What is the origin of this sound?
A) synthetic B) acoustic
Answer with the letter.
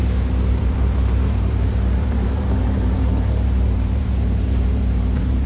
A